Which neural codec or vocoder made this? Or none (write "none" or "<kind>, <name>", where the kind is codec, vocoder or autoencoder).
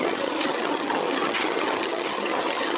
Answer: vocoder, HiFi-GAN